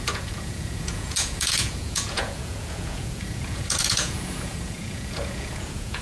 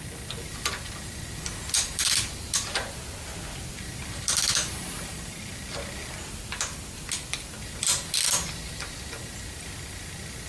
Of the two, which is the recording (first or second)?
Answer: second